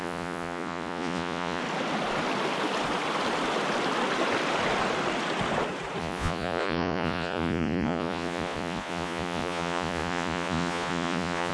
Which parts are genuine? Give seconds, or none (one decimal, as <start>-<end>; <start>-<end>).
1.6-6.0